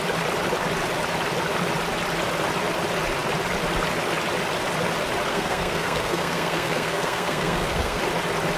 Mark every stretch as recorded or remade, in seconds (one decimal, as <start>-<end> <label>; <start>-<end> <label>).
0.0-5.3 recorded; 5.3-8.0 remade; 8.0-8.6 recorded